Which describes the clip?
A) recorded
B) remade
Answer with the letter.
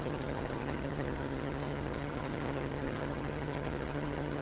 B